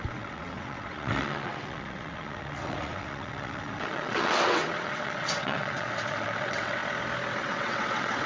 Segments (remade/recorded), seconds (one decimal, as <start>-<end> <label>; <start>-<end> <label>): 0.0-6.8 remade; 6.8-7.4 recorded; 7.4-8.3 remade